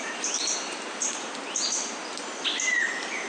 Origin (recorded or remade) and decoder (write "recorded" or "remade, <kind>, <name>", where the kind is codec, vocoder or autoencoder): recorded